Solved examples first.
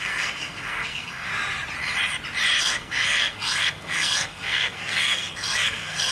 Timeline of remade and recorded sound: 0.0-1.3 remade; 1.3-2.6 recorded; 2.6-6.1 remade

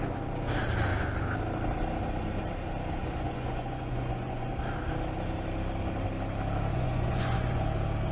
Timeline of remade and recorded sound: 0.0-3.0 recorded; 3.0-4.5 remade; 4.5-6.7 recorded; 6.7-7.6 remade; 7.6-8.1 recorded

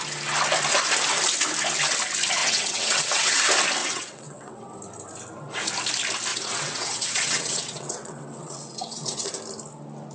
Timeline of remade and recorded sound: 0.0-2.4 recorded; 2.4-3.4 remade; 3.4-3.8 recorded; 3.8-4.7 remade; 4.7-6.3 recorded; 6.3-9.3 remade; 9.3-10.1 recorded

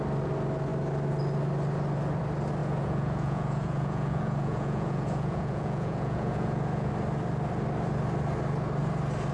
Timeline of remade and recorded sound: 0.0-2.6 recorded; 2.6-6.9 remade; 6.9-9.3 recorded

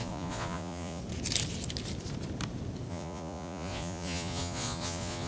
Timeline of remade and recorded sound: 0.0-1.0 remade; 1.0-2.9 recorded; 2.9-5.3 remade

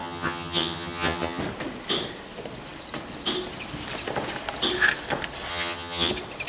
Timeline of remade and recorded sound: 0.0-1.4 remade; 1.4-5.5 recorded; 5.5-6.1 remade; 6.1-6.5 recorded